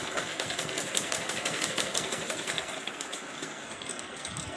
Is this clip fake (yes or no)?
yes